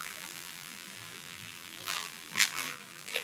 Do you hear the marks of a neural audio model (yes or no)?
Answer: yes